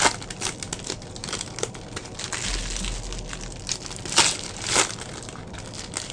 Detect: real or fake real